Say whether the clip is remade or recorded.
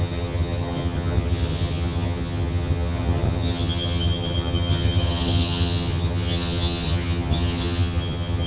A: remade